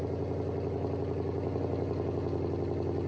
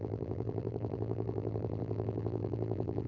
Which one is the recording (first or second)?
first